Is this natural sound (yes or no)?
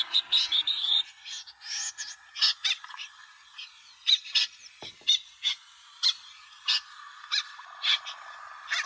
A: yes